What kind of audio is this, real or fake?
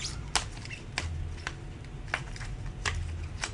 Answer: real